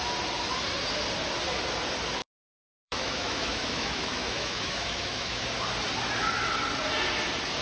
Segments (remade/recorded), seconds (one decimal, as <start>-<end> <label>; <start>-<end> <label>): 0.0-2.2 recorded; 2.2-5.4 remade; 5.4-7.6 recorded